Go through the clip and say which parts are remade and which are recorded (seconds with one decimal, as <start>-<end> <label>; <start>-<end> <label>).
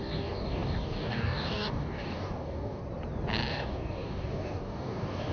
0.0-2.8 remade; 2.8-3.5 recorded; 3.5-5.3 remade